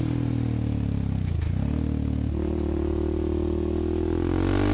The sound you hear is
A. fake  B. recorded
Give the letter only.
B